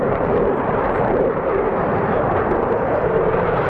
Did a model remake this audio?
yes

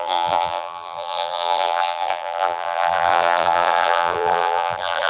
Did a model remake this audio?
yes